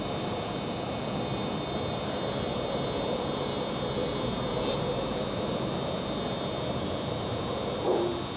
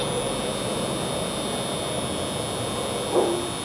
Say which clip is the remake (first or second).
first